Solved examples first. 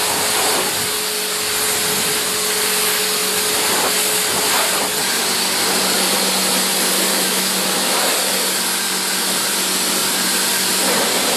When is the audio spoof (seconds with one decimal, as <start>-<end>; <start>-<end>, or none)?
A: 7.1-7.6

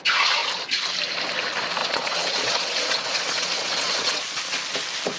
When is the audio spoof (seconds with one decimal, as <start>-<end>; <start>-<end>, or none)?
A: 1.8-4.4

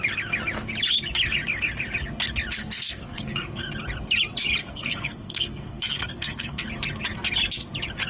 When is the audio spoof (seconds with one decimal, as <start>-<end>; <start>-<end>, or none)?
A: 2.6-3.6; 4.6-6.7

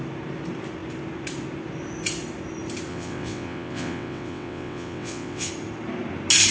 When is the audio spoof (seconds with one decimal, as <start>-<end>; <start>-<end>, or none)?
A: 2.9-5.5

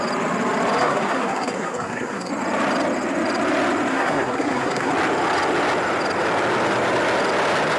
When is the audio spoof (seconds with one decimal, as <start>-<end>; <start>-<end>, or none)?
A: 0.8-2.3; 3.9-4.9